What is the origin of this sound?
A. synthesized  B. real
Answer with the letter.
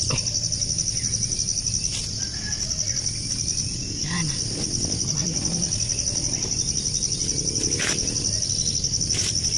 B